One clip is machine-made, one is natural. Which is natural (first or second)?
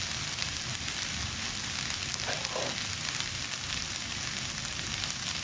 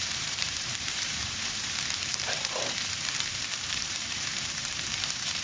first